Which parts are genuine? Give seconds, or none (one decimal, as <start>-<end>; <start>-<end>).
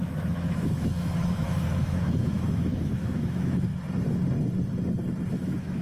3.7-5.3